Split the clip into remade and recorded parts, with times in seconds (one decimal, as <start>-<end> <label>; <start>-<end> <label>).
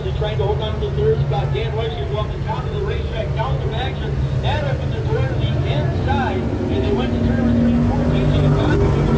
0.0-9.2 recorded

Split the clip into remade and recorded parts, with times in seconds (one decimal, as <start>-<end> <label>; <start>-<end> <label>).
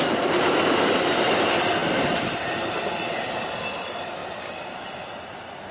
0.0-5.7 recorded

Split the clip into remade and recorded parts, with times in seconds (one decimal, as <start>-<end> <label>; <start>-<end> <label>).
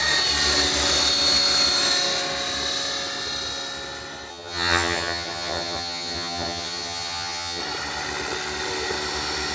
0.0-4.3 recorded; 4.3-7.6 remade; 7.6-9.5 recorded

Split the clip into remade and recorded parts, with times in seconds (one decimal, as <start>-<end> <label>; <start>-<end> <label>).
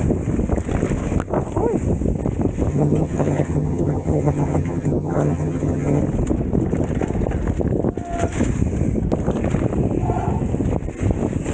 0.0-2.7 recorded; 2.7-6.0 remade; 6.0-11.5 recorded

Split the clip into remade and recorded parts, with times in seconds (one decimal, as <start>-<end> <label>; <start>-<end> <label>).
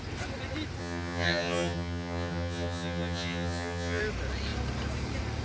0.0-0.8 recorded; 0.8-4.0 remade; 4.0-5.4 recorded